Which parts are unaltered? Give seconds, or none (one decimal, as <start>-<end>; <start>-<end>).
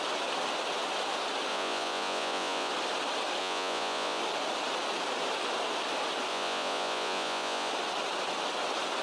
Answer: 0.0-1.5; 2.7-3.4; 4.2-6.3; 7.7-9.0